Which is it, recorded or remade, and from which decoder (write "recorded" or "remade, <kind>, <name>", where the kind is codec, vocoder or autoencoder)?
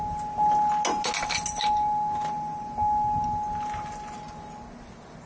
recorded